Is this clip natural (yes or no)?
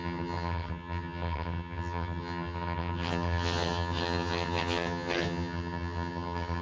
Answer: no